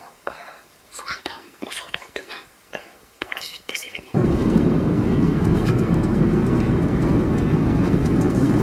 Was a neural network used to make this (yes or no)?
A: yes